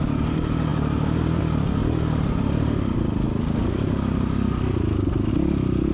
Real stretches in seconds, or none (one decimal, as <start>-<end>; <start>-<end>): 0.0-5.9